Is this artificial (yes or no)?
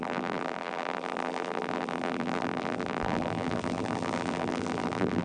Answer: yes